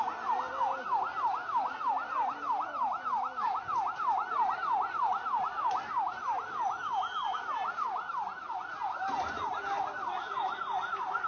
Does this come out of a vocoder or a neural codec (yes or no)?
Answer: no